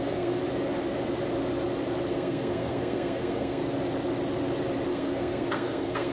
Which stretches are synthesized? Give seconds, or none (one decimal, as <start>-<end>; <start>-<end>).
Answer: 0.0-0.4; 2.1-3.6; 4.9-6.1